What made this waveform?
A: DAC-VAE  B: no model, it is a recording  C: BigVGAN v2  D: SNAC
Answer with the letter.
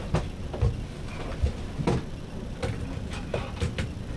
B